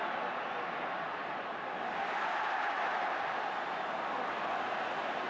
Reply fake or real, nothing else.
real